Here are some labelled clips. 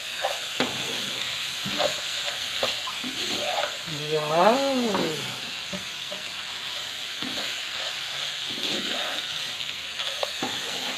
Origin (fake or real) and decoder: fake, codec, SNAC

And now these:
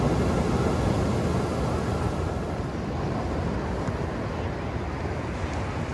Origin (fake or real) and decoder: real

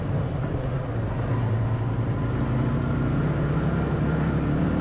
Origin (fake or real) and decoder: real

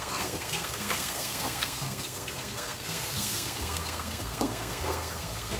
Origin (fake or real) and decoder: fake, codec, SNAC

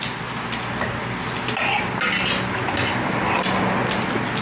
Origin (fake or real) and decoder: real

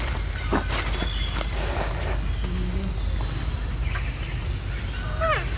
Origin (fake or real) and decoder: real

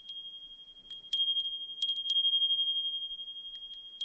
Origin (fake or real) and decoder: real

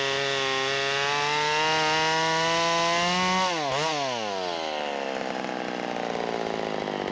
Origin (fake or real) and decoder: real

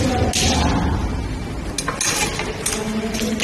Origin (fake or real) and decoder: real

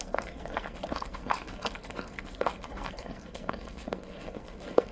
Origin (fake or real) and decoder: fake, codec, SNAC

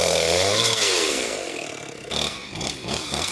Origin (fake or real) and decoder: fake, codec, SNAC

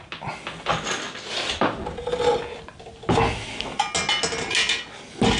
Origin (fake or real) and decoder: real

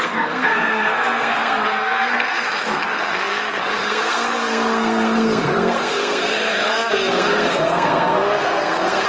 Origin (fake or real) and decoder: fake, codec, SNAC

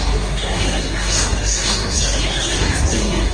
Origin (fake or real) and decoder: fake, codec, SNAC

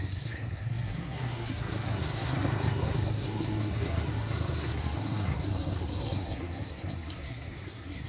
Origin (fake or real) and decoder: fake, codec, SNAC